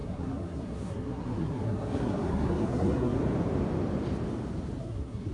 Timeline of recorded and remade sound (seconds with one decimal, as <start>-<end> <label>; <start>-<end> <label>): 0.0-3.2 remade; 3.2-4.8 recorded; 4.8-5.3 remade